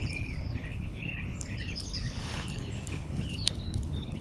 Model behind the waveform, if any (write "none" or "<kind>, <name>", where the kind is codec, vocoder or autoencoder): codec, HILCodec